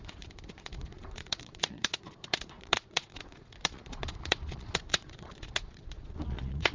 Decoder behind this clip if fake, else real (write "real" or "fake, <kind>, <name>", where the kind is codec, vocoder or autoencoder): fake, vocoder, Vocos